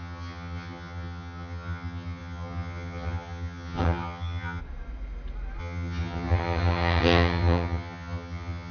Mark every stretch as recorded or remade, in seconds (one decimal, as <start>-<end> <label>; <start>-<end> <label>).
0.0-4.6 remade; 4.6-5.6 recorded; 5.6-8.7 remade